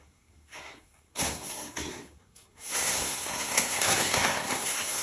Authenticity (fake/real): fake